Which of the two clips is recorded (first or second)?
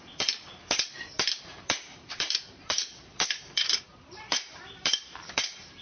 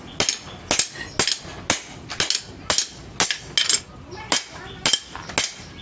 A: second